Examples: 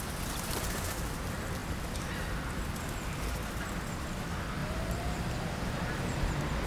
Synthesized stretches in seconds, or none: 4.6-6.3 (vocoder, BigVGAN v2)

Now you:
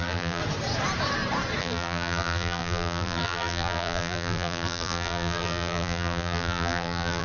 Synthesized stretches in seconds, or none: 0.0-0.4 (vocoder, BigVGAN v2); 1.6-7.2